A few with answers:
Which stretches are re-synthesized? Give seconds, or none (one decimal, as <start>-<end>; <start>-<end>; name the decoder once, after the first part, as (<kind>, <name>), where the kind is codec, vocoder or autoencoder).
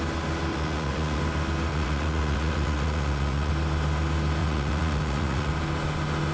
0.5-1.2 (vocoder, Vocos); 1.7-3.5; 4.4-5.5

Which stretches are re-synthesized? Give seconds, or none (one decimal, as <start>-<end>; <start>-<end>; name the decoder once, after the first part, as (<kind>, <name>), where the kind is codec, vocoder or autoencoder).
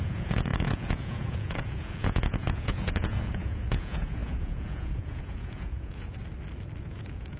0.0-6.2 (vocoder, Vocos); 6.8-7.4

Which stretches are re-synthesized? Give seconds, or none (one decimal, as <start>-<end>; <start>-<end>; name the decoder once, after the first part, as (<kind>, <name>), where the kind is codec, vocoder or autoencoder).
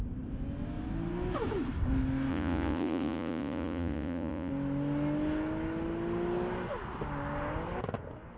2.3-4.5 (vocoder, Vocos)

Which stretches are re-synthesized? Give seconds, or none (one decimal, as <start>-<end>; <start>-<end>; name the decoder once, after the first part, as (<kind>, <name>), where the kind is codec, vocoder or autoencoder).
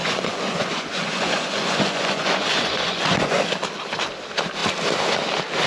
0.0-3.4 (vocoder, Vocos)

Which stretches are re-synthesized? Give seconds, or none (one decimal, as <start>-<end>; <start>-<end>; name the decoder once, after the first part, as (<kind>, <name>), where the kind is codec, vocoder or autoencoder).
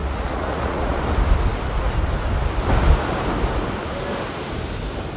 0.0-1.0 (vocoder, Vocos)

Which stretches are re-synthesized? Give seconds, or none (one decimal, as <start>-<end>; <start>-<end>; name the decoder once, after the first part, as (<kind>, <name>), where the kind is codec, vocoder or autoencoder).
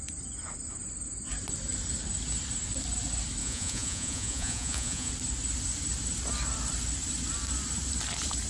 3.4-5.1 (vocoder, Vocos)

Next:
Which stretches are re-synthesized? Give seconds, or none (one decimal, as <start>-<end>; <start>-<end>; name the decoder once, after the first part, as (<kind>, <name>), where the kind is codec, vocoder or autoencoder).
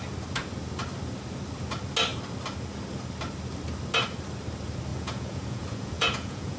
4.9-6.6 (vocoder, Vocos)